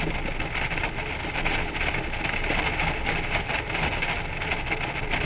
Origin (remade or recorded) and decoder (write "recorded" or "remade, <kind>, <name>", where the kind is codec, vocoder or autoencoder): recorded